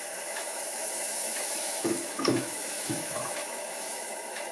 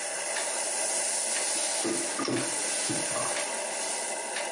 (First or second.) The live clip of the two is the second